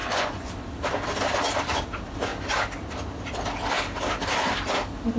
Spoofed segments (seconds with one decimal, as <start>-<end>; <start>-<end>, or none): 0.0-0.5